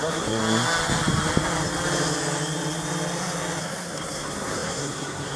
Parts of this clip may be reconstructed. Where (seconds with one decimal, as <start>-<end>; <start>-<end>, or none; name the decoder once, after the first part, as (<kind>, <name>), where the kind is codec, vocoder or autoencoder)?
0.0-0.4 (codec, SNAC); 3.6-5.4